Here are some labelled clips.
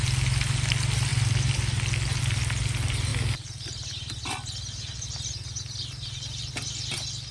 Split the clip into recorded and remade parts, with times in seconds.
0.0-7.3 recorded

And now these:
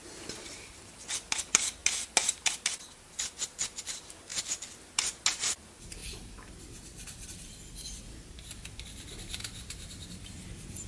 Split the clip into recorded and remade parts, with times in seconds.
0.0-10.9 recorded

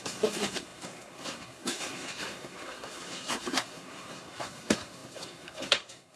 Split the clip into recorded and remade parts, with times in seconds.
0.0-6.2 remade

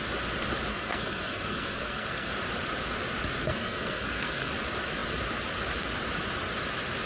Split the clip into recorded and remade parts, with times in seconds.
0.0-0.7 recorded; 0.7-2.3 remade; 2.3-3.4 recorded; 3.4-4.5 remade; 4.5-7.1 recorded

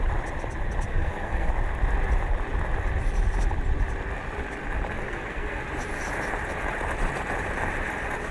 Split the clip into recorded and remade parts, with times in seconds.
0.0-0.9 recorded; 0.9-1.5 remade; 1.5-5.0 recorded; 5.0-5.6 remade; 5.6-8.3 recorded

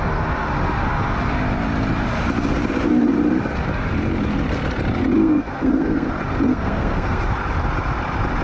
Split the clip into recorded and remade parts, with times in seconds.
0.0-5.2 recorded; 5.2-6.1 remade; 6.1-6.5 recorded; 6.5-7.2 remade; 7.2-8.4 recorded

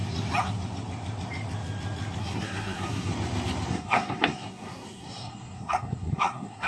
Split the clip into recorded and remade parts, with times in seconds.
0.0-2.2 recorded; 2.2-3.1 remade; 3.1-3.7 recorded; 3.7-6.7 remade